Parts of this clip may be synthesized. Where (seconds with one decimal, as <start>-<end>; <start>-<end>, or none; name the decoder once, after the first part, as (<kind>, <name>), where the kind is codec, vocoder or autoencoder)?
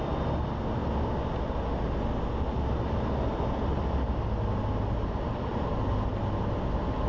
none